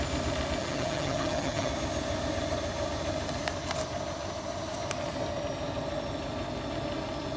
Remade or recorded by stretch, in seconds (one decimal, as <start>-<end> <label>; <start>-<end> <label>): 0.0-0.6 recorded; 0.6-1.7 remade; 1.7-7.4 recorded